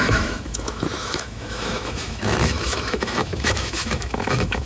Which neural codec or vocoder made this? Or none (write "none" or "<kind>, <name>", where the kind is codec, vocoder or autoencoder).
autoencoder, DAC-VAE